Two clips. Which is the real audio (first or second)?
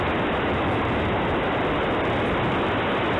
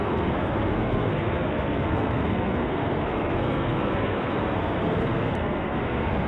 first